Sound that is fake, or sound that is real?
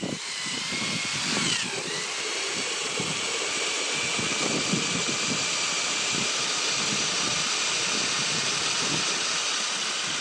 real